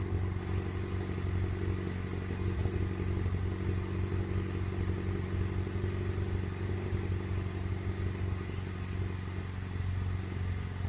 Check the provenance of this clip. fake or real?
real